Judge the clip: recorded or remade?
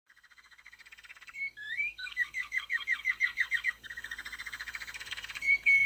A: remade